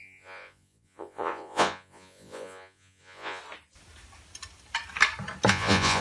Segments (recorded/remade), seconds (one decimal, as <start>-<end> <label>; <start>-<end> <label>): 0.0-3.4 remade; 3.4-5.5 recorded; 5.5-6.0 remade